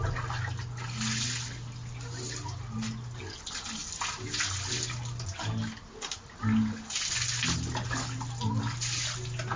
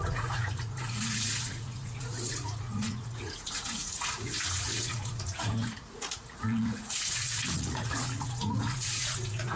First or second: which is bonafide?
first